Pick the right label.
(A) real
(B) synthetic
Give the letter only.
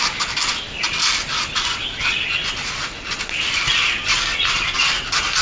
A